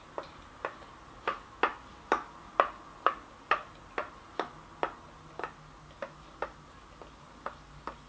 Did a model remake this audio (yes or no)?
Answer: no